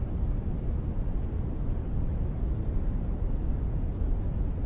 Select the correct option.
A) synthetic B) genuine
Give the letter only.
B